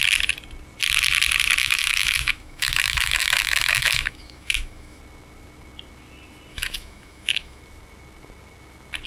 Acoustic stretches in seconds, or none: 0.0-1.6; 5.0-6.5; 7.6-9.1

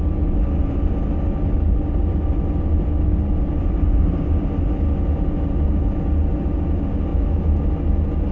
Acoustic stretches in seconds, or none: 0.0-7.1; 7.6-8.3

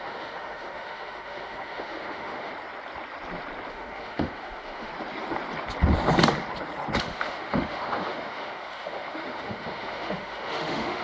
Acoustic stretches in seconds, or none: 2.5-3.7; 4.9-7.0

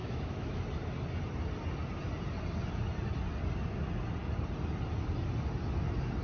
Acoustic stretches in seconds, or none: 0.6-6.2